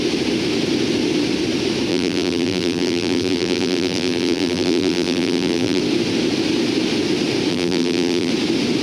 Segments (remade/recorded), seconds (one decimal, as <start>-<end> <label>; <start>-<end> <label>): 0.0-1.9 recorded; 1.9-5.8 remade; 5.8-7.5 recorded; 7.5-8.3 remade; 8.3-8.8 recorded